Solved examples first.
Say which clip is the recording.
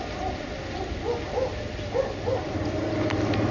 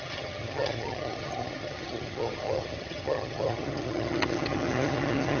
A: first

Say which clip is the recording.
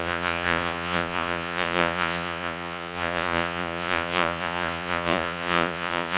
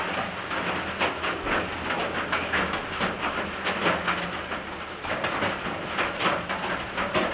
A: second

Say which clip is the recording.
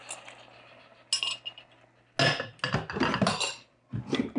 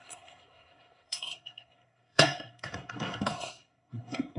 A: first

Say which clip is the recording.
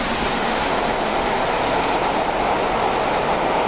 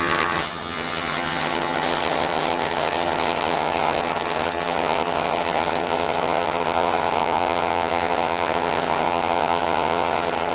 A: first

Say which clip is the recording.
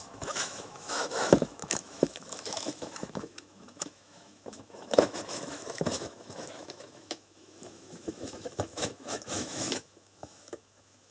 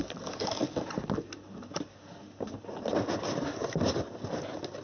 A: second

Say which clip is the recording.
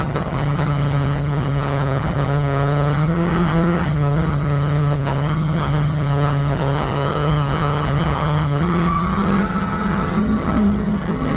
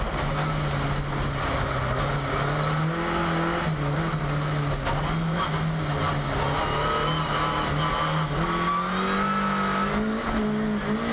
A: second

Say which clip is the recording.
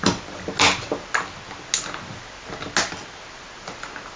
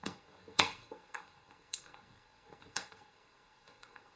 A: first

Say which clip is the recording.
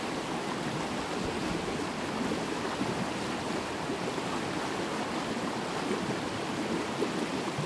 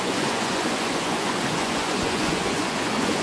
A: first